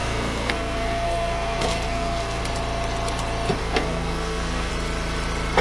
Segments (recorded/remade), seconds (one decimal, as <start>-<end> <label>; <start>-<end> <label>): 0.0-2.4 remade; 2.4-3.6 recorded; 3.6-4.7 remade; 4.7-5.6 recorded